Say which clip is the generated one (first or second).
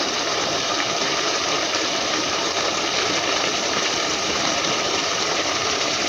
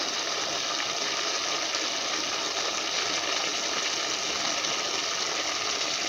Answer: first